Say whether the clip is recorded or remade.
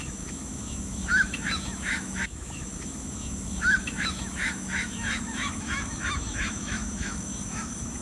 remade